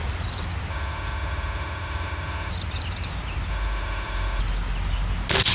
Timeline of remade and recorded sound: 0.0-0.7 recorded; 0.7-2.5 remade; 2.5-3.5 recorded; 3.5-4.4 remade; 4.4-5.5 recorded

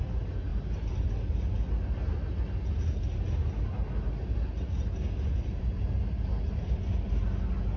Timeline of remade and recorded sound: 0.0-7.8 recorded

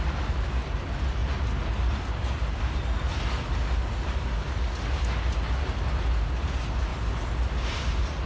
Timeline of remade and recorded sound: 0.0-8.3 recorded

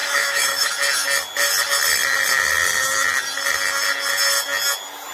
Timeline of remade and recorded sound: 0.0-0.7 remade; 0.7-5.1 recorded

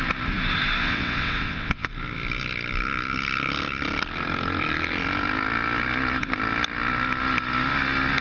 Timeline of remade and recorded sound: 0.0-0.8 recorded; 0.8-1.9 remade; 1.9-8.2 recorded